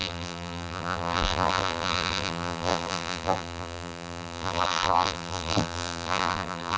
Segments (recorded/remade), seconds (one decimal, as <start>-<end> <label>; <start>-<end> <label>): 0.0-6.8 remade